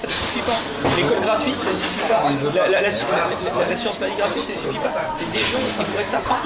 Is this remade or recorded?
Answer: recorded